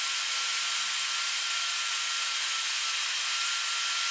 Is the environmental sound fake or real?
fake